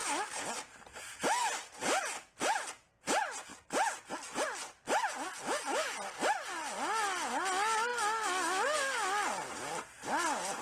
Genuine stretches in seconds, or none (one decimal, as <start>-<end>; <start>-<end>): 0.0-3.5; 5.6-10.6